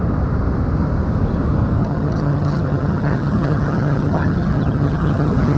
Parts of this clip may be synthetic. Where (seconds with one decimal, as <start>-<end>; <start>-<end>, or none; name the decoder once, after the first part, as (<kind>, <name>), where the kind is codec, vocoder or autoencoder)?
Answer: 1.8-5.6 (vocoder, HiFi-GAN)